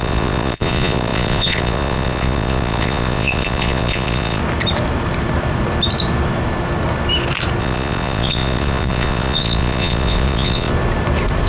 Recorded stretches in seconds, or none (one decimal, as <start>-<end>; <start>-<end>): 4.4-7.6; 10.7-11.5